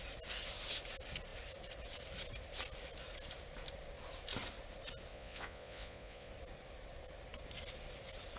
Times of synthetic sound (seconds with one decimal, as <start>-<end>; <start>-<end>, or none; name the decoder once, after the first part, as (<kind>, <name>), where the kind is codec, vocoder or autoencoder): 5.1-6.3 (vocoder, Vocos)